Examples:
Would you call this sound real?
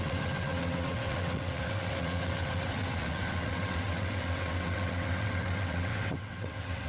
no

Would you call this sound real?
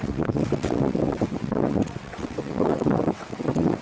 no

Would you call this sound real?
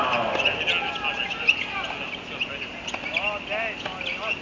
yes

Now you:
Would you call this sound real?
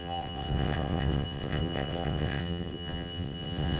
no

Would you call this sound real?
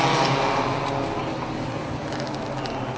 yes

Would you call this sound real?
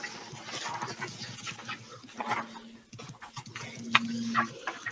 yes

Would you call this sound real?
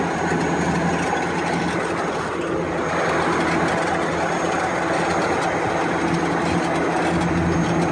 yes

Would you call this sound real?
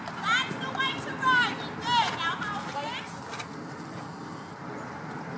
yes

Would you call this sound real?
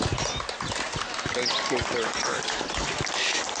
yes